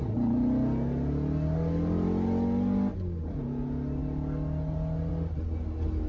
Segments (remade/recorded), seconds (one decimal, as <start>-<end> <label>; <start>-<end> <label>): 0.0-6.1 recorded